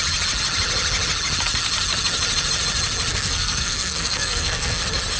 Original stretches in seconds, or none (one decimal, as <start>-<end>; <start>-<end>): 0.0-3.1; 4.8-5.2